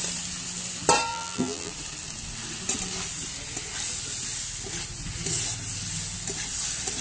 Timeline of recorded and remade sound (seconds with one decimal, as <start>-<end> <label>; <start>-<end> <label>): 0.0-1.1 recorded; 1.1-1.7 remade; 1.7-7.0 recorded